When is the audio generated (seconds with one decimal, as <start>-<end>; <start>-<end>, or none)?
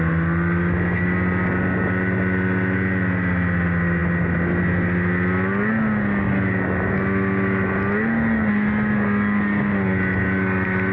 none